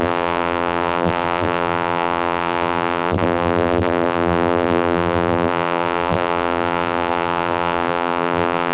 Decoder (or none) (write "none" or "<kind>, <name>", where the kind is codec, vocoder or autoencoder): vocoder, BigVGAN v2